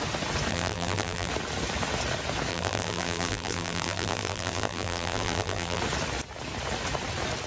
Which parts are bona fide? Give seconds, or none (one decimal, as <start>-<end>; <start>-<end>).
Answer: 0.0-0.5; 1.3-2.5; 5.8-7.5